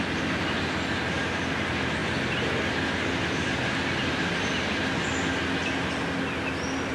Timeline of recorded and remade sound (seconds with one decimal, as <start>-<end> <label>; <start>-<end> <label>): 0.0-6.9 recorded